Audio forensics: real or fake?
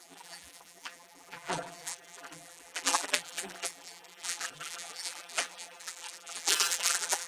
fake